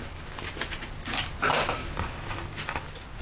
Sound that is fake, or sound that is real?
real